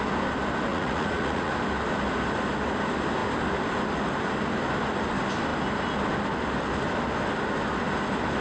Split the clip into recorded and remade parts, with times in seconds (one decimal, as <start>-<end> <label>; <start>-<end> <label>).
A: 0.0-0.7 recorded; 0.7-1.5 remade; 1.5-8.4 recorded